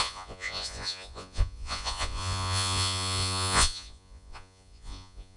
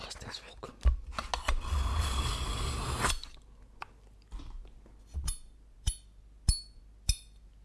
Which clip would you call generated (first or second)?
first